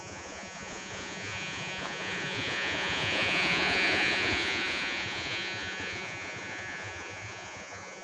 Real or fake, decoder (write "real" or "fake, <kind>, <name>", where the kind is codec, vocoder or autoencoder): fake, vocoder, Vocos